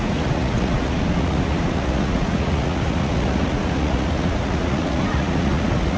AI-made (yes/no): yes